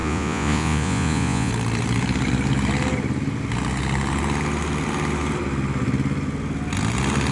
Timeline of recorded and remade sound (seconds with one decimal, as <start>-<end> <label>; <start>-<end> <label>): 0.0-1.5 remade; 1.5-7.3 recorded